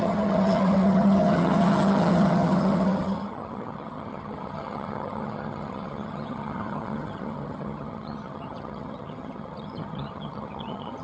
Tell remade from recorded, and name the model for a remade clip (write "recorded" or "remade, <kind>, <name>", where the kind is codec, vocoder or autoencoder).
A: remade, vocoder, HiFi-GAN